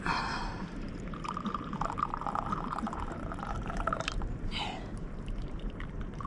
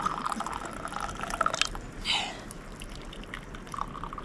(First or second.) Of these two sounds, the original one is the second